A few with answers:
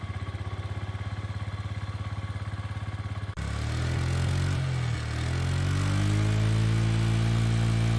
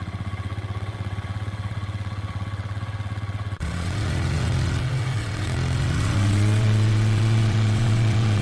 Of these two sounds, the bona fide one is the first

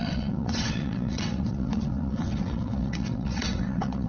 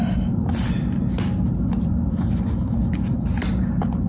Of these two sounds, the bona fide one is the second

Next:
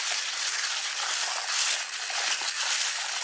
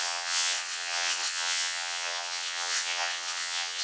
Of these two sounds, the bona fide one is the first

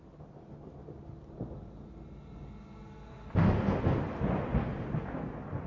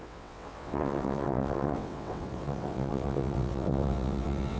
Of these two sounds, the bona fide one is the first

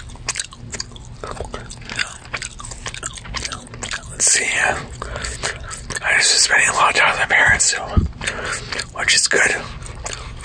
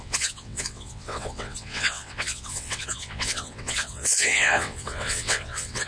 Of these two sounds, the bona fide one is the first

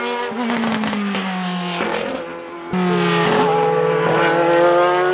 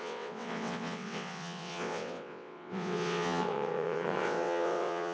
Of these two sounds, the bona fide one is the first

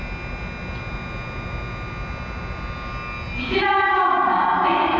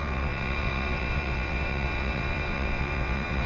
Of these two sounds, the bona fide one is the first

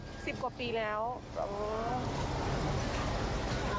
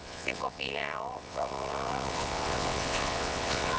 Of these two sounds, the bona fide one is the first